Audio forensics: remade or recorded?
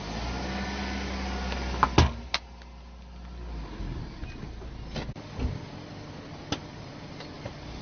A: recorded